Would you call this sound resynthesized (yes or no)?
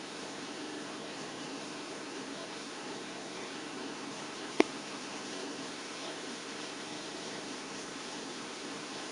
yes